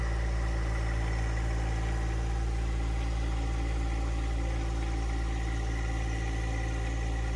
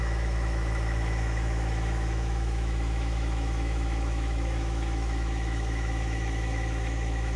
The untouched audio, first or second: first